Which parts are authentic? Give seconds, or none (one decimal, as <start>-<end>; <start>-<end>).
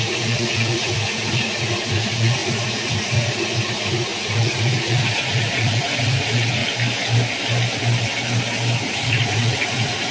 6.6-8.8